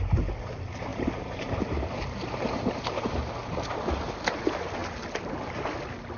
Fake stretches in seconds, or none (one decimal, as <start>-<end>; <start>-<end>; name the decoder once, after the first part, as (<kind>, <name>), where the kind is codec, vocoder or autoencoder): 0.9-3.3 (vocoder, BigVGAN v2)